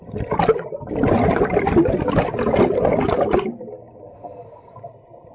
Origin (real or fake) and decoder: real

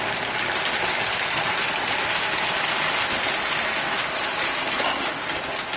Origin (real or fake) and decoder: real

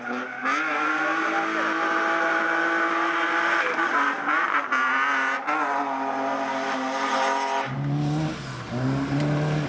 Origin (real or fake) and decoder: real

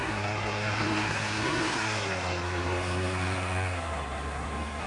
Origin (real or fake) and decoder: fake, codec, SNAC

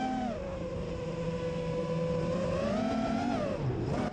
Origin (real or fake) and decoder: fake, vocoder, BigVGAN v2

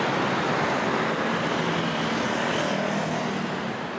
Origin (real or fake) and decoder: real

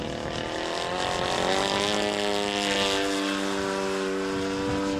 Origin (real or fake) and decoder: real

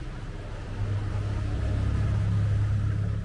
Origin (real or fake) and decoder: real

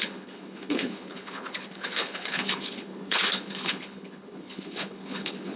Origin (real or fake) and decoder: fake, codec, HILCodec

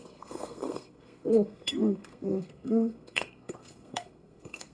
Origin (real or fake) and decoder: fake, codec, SNAC